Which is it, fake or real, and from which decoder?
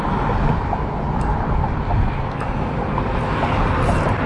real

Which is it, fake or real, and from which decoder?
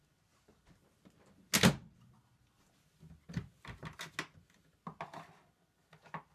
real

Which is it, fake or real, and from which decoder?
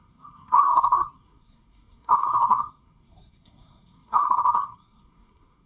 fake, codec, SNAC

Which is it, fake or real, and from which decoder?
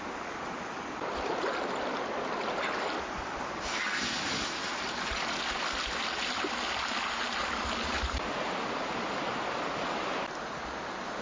real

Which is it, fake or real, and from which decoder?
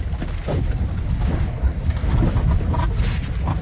real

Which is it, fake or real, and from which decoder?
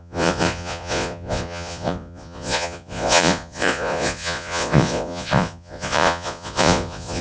fake, vocoder, Vocos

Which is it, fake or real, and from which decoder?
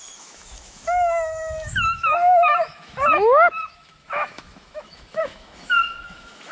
fake, autoencoder, DAC-VAE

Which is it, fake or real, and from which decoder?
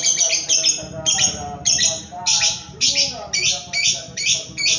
real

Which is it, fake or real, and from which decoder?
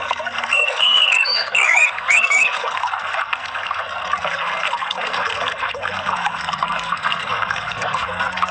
fake, codec, SNAC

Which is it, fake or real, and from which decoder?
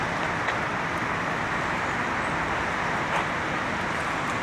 real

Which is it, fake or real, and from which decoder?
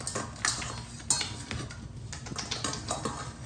real